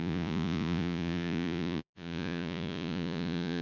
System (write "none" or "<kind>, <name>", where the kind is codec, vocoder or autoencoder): vocoder, Vocos